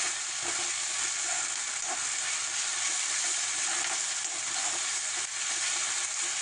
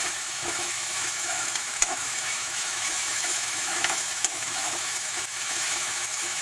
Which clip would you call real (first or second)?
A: first